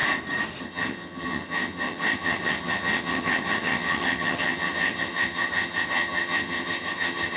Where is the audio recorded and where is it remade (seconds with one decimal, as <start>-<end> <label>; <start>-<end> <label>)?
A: 0.0-0.6 recorded; 0.6-7.4 remade